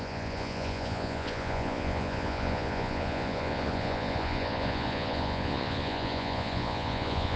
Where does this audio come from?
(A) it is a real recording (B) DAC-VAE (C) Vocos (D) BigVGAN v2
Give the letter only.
C